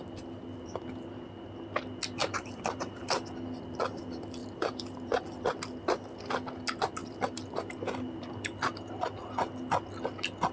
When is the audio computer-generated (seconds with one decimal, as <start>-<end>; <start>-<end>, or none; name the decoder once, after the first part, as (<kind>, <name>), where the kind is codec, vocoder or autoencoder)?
2.2-3.1 (vocoder, BigVGAN v2); 4.4-5.2; 7.0-8.3